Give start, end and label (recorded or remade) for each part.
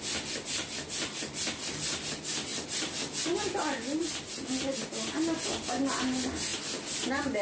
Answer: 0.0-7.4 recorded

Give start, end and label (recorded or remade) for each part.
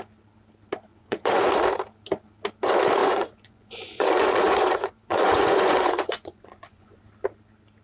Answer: 0.0-0.9 recorded; 0.9-1.5 remade; 1.5-3.0 recorded; 3.0-7.0 remade; 7.0-7.8 recorded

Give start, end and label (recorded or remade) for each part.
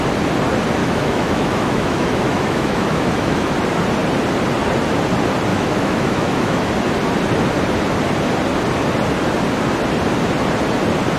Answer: 0.0-0.8 recorded; 0.8-3.5 remade; 3.5-5.5 recorded; 5.5-6.7 remade; 6.7-11.2 recorded